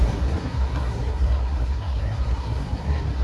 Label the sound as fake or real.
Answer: fake